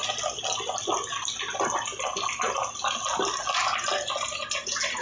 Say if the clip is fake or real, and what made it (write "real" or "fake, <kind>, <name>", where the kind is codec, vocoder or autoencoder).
real